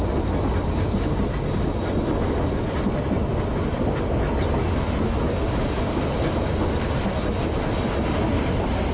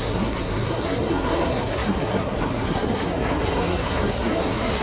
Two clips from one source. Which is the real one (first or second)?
first